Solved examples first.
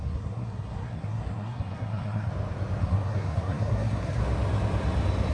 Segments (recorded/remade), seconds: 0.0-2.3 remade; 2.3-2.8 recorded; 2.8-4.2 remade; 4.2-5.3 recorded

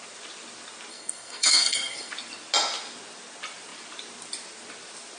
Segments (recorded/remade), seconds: 0.0-0.9 recorded; 0.9-2.1 remade; 2.1-5.2 recorded

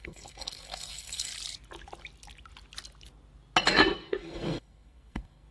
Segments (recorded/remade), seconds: 0.0-1.3 remade; 1.3-3.6 recorded; 3.6-5.5 remade

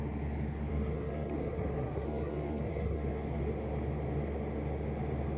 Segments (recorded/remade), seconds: 0.0-0.7 recorded; 0.7-3.4 remade; 3.4-5.4 recorded

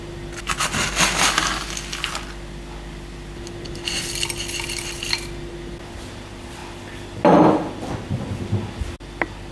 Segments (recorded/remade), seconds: 0.0-9.5 recorded

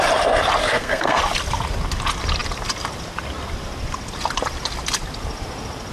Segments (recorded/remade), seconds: 0.0-0.6 recorded; 0.6-1.2 remade; 1.2-5.9 recorded